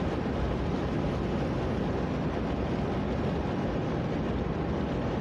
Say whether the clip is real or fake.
real